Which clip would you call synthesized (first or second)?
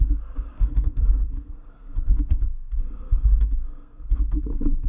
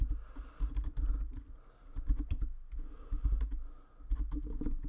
first